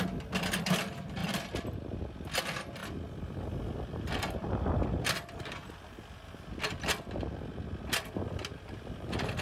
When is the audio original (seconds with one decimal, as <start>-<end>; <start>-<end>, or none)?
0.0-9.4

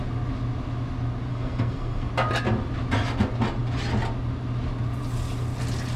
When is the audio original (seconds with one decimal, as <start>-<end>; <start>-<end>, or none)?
0.0-1.3; 2.1-6.0

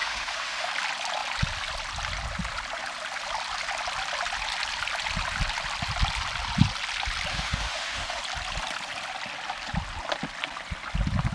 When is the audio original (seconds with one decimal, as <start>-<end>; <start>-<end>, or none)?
0.7-7.3; 8.2-11.3